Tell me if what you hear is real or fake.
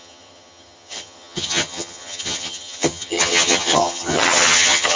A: fake